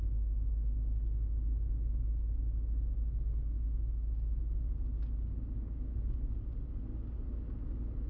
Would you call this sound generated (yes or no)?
no